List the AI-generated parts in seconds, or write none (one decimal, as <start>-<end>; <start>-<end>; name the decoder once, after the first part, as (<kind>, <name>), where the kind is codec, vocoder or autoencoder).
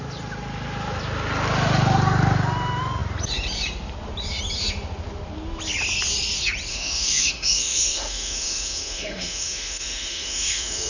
6.7-10.9 (autoencoder, DAC-VAE)